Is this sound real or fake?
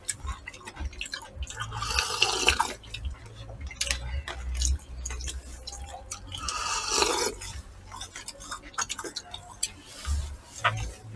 real